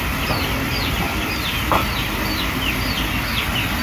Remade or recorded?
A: recorded